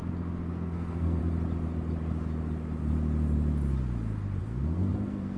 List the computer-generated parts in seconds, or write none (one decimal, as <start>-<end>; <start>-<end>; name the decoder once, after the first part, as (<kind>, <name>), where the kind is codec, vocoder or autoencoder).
0.5-1.2 (codec, SNAC); 4.4-5.4